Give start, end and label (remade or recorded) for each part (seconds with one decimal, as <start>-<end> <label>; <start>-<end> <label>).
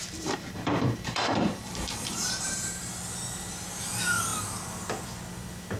0.0-2.9 remade; 2.9-5.8 recorded